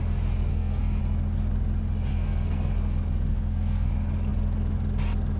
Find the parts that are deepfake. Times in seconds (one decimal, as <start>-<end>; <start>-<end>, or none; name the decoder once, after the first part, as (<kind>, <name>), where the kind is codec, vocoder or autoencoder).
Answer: 0.5-1.0 (codec, SNAC); 2.1-2.7; 3.3-3.9